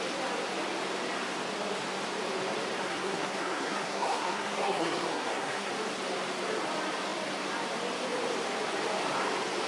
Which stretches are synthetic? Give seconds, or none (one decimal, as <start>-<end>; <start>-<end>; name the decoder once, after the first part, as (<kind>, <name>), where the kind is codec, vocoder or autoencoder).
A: 2.9-5.7 (codec, SNAC)